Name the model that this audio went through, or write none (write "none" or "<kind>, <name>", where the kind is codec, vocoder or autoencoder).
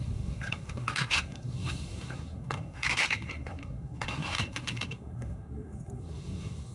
codec, SNAC